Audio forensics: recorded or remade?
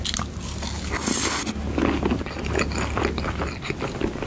recorded